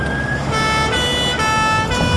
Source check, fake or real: real